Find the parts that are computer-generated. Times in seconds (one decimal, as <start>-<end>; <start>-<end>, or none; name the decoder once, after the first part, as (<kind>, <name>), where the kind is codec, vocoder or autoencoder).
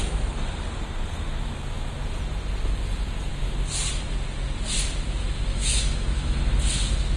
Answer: 5.5-6.4 (autoencoder, DAC-VAE)